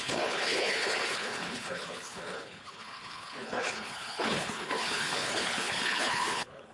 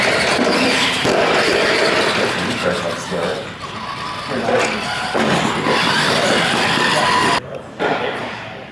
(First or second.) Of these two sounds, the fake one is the first